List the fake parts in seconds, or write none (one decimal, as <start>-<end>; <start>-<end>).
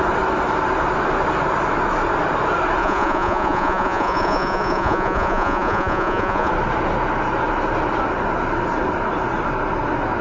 2.8-6.5